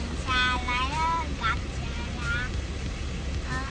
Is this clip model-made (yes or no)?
no